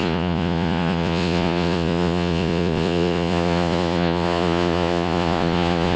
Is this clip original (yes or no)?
no